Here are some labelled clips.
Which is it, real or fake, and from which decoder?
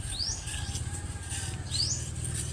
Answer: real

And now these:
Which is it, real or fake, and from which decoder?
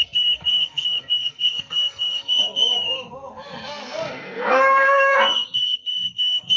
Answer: fake, codec, SNAC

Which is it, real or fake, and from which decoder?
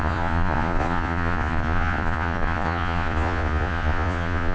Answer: fake, vocoder, Vocos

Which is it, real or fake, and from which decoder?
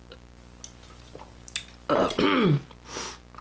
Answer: real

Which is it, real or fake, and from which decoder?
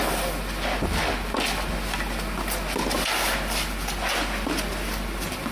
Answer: real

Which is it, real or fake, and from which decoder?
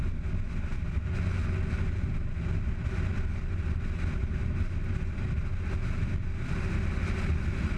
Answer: real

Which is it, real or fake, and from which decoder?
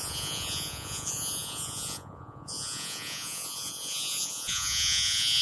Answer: fake, vocoder, Vocos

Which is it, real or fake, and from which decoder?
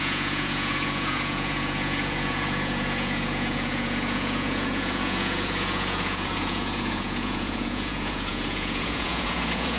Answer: fake, vocoder, Vocos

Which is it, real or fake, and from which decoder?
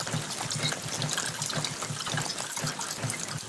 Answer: real